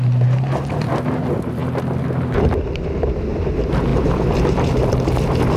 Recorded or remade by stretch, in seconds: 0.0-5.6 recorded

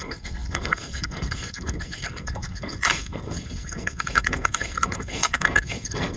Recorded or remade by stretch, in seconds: 0.0-6.2 remade